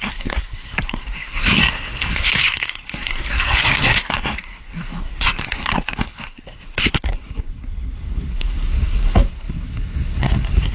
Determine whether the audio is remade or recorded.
remade